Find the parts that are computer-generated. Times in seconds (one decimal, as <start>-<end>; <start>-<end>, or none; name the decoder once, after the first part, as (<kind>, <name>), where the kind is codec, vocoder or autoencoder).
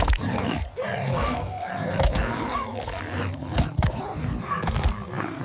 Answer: 1.1-1.7 (codec, SNAC)